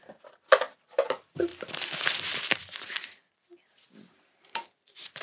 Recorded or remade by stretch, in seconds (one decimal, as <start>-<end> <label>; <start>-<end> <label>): 0.0-5.2 recorded